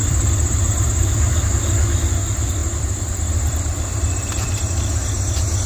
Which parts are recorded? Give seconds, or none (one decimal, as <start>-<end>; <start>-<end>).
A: 1.4-2.6; 4.7-5.7